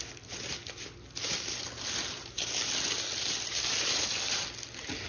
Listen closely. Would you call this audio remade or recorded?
recorded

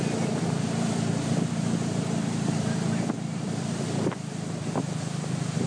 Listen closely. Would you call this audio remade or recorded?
remade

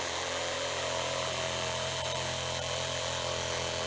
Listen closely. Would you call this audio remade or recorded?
remade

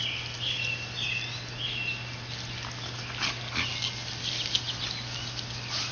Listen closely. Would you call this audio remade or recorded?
recorded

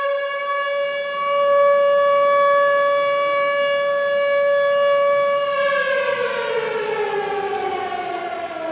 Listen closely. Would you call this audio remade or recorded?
recorded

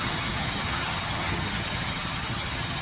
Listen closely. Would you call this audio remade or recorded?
remade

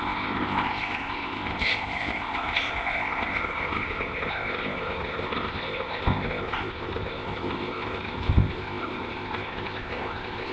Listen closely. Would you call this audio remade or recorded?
remade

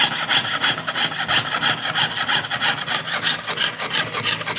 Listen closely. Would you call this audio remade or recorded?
recorded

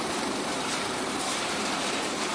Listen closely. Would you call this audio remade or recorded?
remade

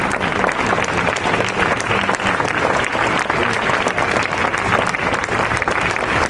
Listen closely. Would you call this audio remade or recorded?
recorded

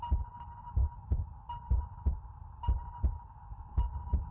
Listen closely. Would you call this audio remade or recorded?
recorded